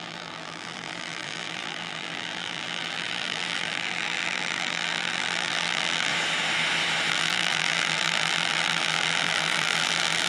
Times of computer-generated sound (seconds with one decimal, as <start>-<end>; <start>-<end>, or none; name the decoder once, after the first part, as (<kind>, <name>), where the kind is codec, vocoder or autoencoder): 0.0-6.1 (vocoder, BigVGAN v2); 7.1-10.3